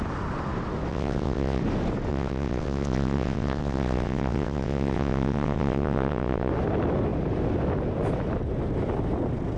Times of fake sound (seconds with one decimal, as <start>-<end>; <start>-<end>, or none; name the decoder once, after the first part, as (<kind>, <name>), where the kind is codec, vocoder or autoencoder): 0.9-1.6 (vocoder, WaveNeXt); 2.1-6.5